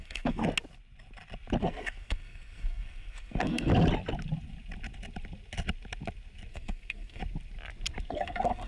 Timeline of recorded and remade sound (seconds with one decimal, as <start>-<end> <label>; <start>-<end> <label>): 0.0-0.4 remade; 0.4-1.6 recorded; 1.6-3.7 remade; 3.7-6.5 recorded; 6.5-7.2 remade; 7.2-8.1 recorded; 8.1-8.7 remade